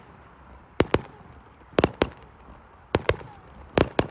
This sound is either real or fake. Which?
fake